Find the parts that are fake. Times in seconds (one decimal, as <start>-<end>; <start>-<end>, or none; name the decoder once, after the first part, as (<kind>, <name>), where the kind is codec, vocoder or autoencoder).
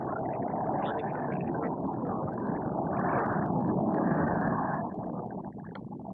0.9-2.5 (codec, DAC); 3.6-5.0